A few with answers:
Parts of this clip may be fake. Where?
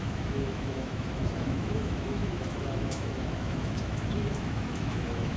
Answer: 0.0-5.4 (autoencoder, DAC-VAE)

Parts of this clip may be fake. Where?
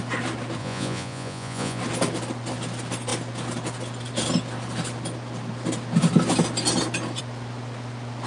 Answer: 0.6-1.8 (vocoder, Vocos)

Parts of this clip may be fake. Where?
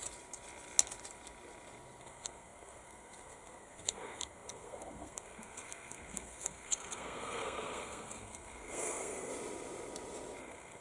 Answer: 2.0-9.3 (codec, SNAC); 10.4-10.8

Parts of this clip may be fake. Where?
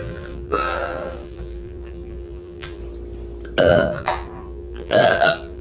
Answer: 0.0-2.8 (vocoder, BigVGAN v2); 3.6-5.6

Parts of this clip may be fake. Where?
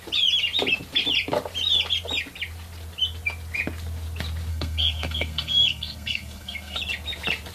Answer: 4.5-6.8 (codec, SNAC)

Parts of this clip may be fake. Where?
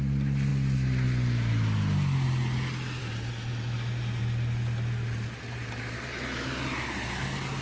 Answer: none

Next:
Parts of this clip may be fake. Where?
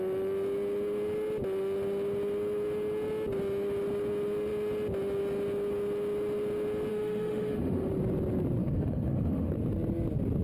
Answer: 6.9-7.9 (autoencoder, DAC-VAE); 8.6-9.5